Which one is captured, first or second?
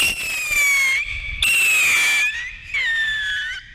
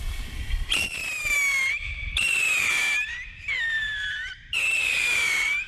first